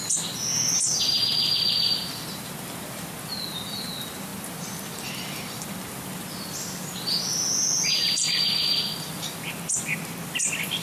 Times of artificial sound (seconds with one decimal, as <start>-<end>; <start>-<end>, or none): none